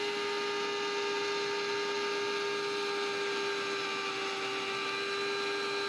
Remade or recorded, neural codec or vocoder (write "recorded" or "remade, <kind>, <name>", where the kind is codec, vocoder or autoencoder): recorded